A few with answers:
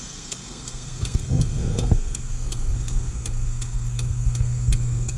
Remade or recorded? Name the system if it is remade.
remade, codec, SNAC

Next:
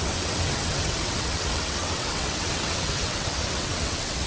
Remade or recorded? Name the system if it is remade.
remade, vocoder, WaveNeXt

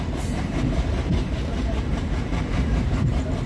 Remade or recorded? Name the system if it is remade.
remade, vocoder, BigVGAN v2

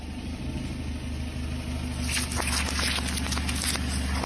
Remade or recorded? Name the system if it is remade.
recorded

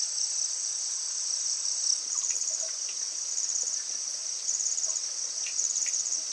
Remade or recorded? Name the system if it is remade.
recorded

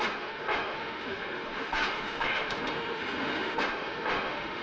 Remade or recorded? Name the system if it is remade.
remade, autoencoder, DAC-VAE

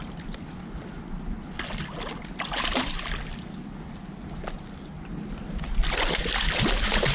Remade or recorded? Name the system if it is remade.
recorded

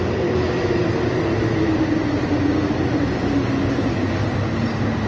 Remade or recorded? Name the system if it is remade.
recorded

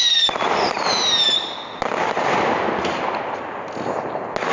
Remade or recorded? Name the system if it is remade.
recorded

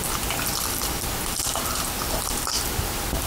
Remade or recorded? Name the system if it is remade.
recorded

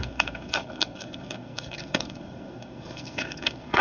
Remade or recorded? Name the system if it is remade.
remade, codec, SNAC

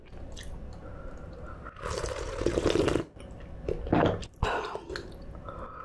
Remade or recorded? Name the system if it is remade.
recorded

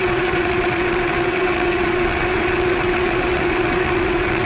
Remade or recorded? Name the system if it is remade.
remade, vocoder, WaveNeXt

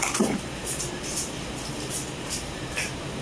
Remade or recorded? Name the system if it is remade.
recorded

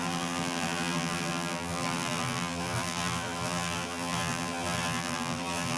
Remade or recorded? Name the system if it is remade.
remade, vocoder, BigVGAN v2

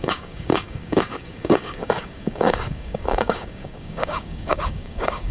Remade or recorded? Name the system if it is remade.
remade, codec, DAC